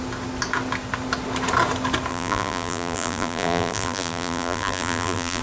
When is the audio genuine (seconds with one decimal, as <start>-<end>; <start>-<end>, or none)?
0.0-2.1